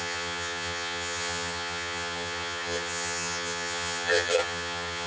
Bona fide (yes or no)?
no